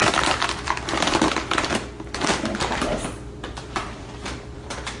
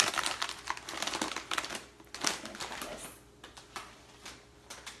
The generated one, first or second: first